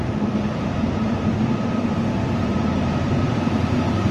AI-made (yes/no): yes